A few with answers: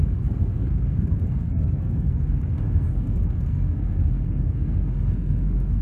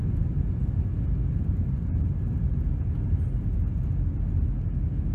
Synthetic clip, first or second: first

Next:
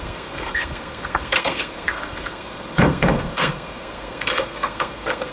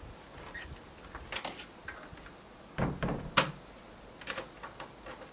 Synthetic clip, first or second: first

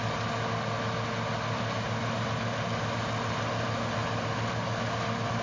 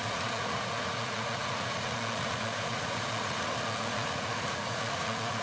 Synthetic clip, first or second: second